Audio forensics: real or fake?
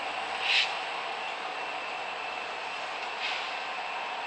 real